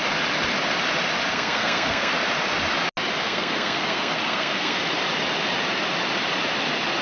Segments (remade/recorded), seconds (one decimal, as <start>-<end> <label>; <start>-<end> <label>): 0.0-1.3 recorded; 1.3-2.1 remade; 2.1-3.2 recorded; 3.2-4.8 remade; 4.8-7.0 recorded